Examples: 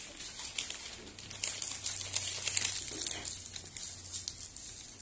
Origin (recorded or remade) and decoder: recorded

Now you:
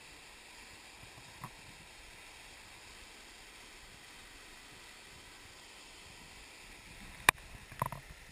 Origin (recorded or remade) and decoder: recorded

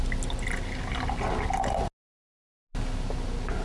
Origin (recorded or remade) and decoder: recorded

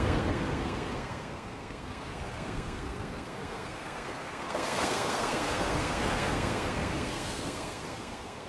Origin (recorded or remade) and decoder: remade, codec, SNAC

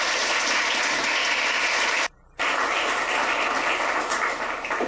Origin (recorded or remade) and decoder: recorded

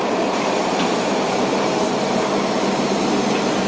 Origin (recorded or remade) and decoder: remade, vocoder, BigVGAN v2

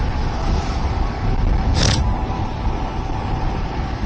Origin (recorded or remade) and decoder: recorded